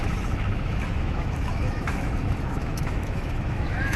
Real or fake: fake